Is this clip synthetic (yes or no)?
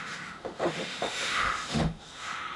yes